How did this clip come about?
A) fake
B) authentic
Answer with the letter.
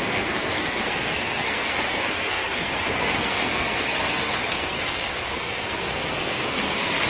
A